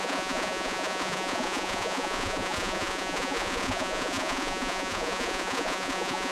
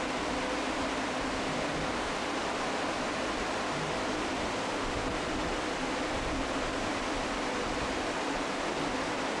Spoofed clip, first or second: first